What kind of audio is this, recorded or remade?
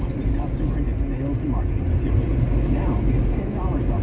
recorded